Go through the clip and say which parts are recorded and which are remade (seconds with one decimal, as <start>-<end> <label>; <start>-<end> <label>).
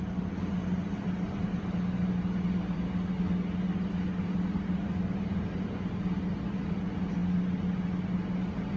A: 0.0-8.8 recorded